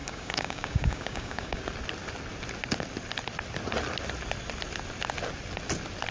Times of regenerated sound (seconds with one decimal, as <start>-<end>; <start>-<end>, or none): 0.0-1.6